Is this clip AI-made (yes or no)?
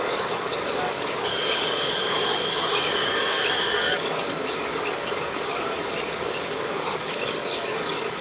yes